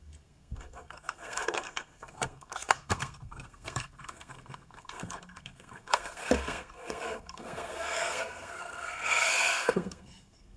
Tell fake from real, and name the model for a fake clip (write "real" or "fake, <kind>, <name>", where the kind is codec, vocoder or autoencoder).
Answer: fake, codec, SNAC